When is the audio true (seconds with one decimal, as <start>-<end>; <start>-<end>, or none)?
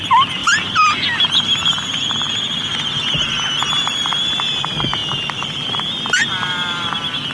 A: 0.0-7.3